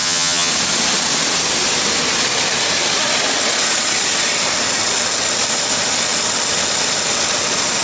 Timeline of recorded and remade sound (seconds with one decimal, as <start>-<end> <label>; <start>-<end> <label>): 0.0-0.5 remade; 0.5-7.8 recorded